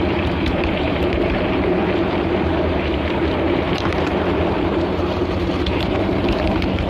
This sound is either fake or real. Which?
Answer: fake